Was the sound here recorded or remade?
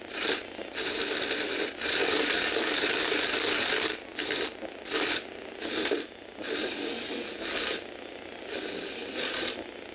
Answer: recorded